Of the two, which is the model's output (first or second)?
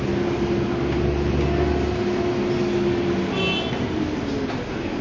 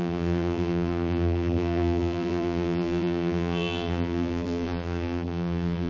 second